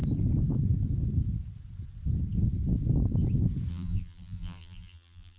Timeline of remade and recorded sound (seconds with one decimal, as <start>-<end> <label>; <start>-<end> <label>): 0.0-3.7 recorded; 3.7-5.4 remade